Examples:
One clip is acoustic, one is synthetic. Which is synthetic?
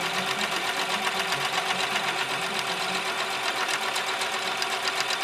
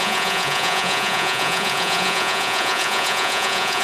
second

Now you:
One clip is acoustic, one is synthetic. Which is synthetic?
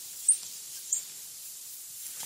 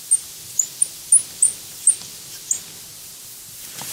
first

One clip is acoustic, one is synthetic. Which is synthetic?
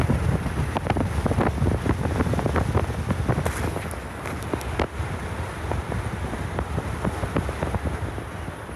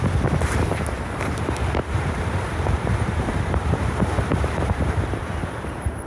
second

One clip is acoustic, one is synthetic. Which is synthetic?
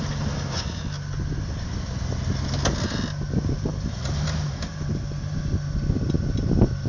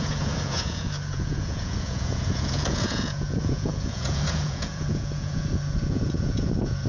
second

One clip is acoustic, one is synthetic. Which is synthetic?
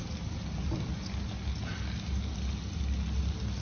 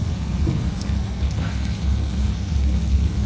second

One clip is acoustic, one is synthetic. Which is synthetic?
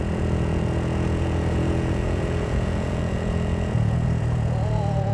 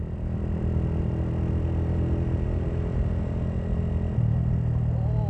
first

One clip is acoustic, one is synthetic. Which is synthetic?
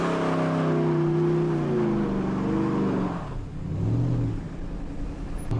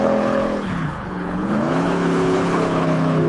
second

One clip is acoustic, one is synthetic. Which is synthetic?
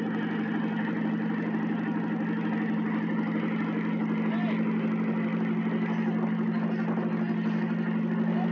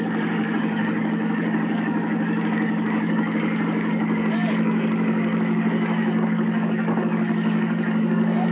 second